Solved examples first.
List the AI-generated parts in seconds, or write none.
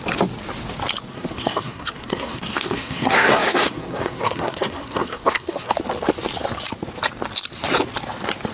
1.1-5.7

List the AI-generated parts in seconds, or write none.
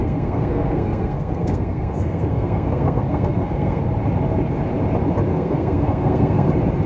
0.0-3.8; 5.3-6.5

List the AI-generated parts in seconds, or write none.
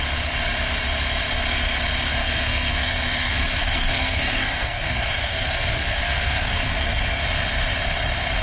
2.2-7.2